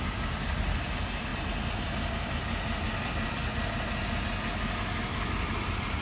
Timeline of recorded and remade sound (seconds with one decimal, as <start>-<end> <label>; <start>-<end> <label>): 0.0-1.3 remade; 1.3-1.8 recorded; 1.8-3.4 remade; 3.4-6.0 recorded